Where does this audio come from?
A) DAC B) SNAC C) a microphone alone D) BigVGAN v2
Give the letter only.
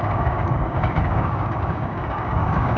A